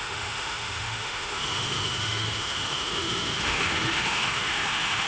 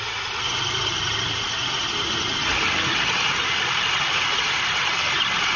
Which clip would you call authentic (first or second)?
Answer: second